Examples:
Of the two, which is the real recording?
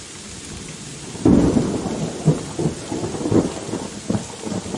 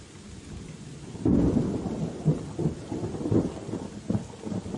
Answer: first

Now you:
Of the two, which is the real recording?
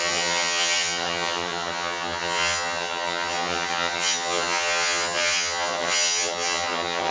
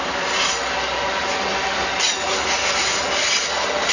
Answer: second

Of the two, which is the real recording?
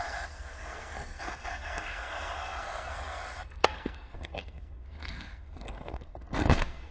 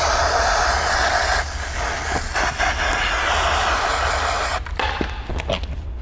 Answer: second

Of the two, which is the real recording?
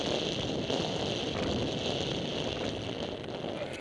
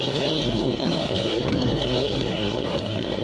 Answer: first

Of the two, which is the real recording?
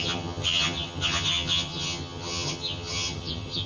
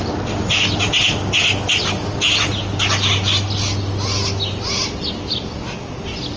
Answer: second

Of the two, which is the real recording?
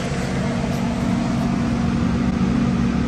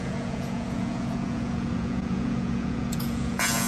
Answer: first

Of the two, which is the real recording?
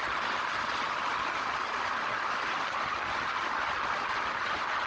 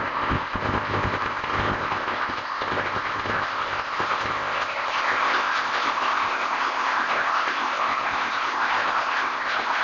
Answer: first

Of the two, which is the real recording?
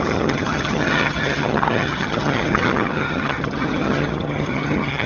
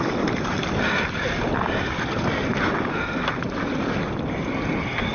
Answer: second